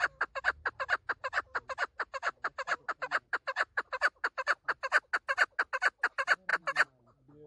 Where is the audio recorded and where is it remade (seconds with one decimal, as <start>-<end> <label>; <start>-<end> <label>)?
0.0-1.2 recorded; 1.2-4.8 remade; 4.8-6.5 recorded; 6.5-7.0 remade; 7.0-7.5 recorded